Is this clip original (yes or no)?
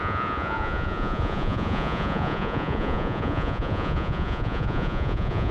no